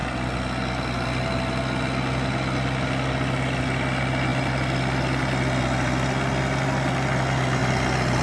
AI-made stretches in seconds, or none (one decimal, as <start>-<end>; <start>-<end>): none